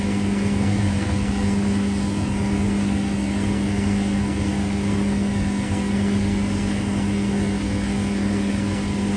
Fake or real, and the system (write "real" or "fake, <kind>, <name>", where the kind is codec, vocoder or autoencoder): fake, codec, SNAC